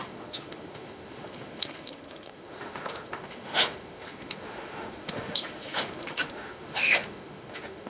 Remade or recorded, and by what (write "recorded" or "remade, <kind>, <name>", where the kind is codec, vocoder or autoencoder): remade, autoencoder, DAC-VAE